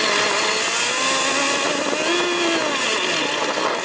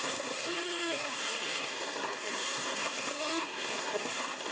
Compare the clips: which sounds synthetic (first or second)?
second